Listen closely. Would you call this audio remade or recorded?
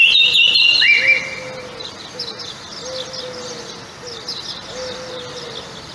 recorded